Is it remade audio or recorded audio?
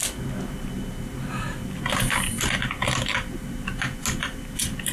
recorded